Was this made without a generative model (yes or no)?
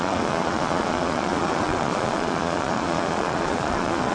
no